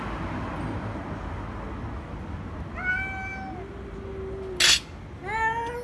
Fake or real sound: real